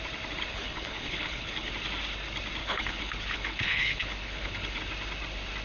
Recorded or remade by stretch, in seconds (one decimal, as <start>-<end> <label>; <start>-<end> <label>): 0.0-0.5 recorded; 0.5-1.7 remade; 1.7-2.6 recorded; 2.6-4.8 remade; 4.8-5.6 recorded